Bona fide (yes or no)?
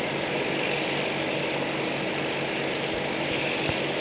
yes